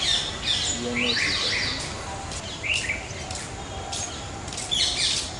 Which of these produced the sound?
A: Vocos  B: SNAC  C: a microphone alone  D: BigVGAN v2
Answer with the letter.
C